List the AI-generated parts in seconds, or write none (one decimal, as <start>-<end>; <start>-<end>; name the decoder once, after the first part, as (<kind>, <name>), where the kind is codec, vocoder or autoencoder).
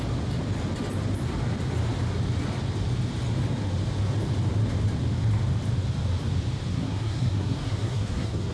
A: 6.7-8.5 (codec, SNAC)